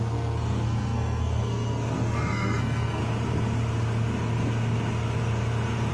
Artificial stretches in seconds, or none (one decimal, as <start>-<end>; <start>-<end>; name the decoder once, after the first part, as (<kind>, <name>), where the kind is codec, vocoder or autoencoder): 0.0-3.0 (codec, SNAC)